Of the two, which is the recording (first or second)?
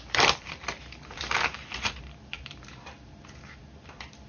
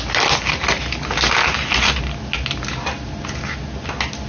second